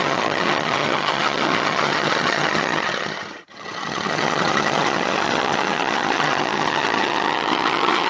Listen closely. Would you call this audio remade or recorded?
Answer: remade